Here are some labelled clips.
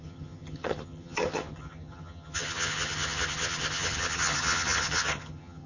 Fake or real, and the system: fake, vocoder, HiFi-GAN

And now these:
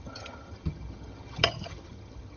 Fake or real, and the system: fake, vocoder, HiFi-GAN